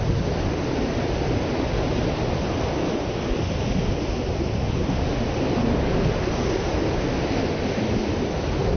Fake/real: real